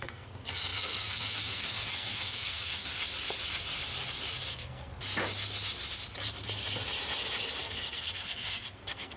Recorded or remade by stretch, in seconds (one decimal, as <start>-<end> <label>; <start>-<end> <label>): 0.0-3.0 remade; 3.0-4.5 recorded; 4.5-4.9 remade; 4.9-7.6 recorded; 7.6-9.2 remade